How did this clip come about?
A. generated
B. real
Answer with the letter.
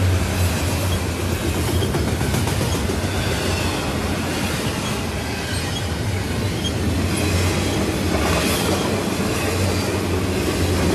B